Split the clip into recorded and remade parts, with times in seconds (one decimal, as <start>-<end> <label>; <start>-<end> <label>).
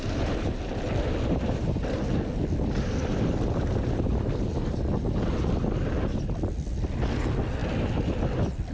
0.0-8.7 recorded